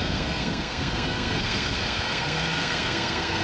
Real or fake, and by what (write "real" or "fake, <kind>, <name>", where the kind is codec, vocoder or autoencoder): fake, codec, SNAC